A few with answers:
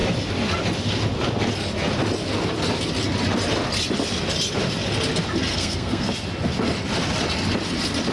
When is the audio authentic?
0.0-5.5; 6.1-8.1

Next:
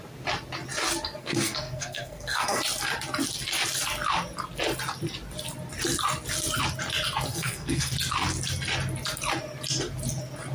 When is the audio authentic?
0.0-1.2; 2.6-7.3; 7.9-10.5

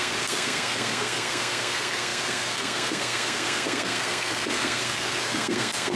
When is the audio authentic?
none

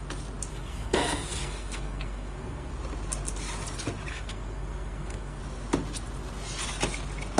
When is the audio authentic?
0.0-0.5; 2.7-4.1; 5.4-7.4

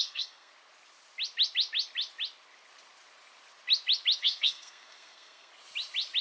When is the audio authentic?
0.5-4.2; 5.5-6.2

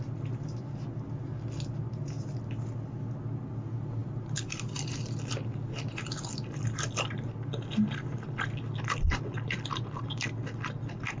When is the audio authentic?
0.0-11.2

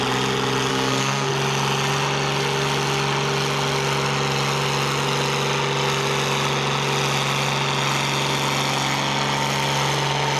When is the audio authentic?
0.0-0.7; 1.3-10.4